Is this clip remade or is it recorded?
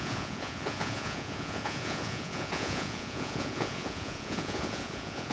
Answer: remade